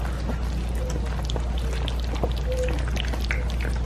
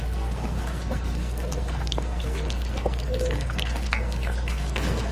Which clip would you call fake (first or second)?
second